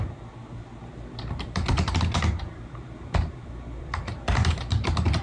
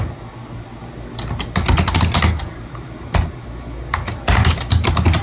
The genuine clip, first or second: second